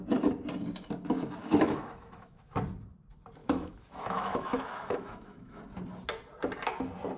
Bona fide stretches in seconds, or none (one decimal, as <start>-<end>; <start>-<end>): 0.0-1.4; 2.4-3.4; 5.6-7.2